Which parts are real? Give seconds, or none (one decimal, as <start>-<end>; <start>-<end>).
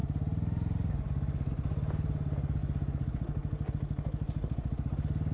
0.0-5.3